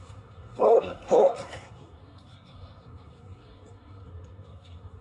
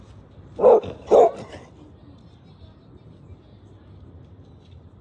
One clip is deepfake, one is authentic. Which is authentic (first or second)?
second